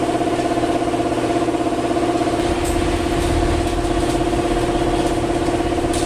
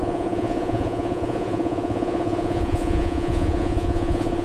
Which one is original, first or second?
first